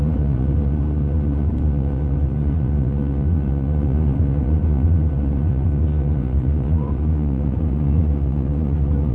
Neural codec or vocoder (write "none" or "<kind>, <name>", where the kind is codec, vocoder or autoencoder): vocoder, Vocos